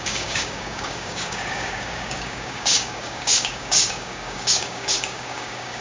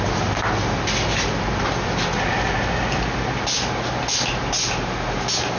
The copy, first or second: first